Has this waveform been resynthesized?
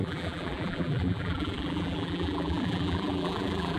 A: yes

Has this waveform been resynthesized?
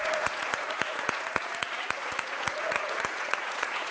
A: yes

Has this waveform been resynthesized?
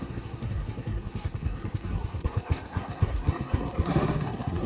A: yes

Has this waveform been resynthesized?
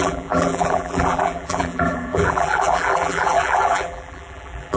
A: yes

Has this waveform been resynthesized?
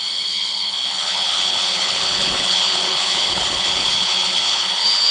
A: yes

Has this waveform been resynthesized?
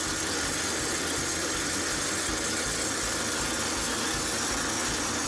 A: no